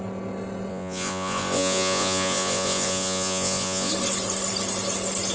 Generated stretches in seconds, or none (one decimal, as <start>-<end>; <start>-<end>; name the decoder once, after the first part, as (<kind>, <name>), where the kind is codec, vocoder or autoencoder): 0.7-3.9 (vocoder, Vocos)